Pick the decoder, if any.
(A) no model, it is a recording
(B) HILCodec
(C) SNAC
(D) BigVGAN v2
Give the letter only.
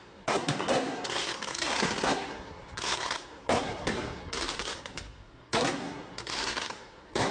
C